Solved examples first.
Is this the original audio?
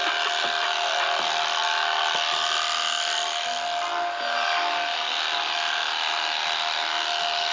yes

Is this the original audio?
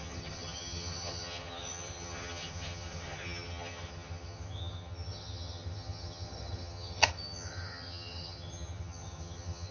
no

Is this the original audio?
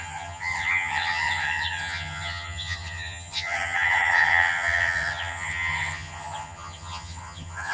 no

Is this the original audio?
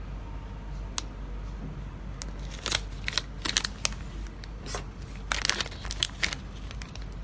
yes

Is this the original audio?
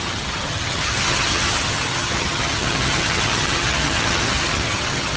no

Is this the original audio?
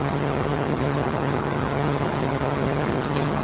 no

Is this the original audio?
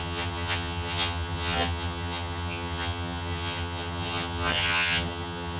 no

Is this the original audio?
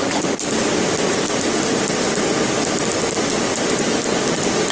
yes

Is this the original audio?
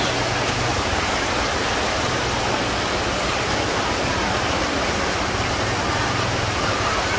yes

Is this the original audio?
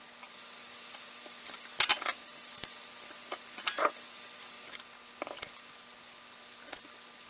yes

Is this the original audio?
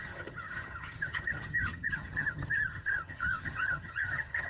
no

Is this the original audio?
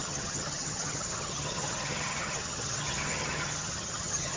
no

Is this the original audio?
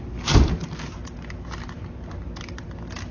yes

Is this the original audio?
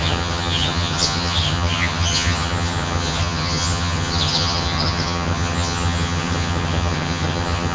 no